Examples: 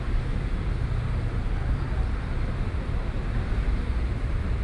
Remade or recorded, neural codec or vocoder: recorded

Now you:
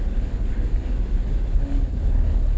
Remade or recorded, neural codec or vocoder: remade, codec, HILCodec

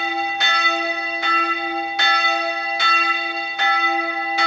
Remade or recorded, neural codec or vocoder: recorded